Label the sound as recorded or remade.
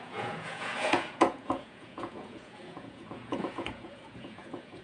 remade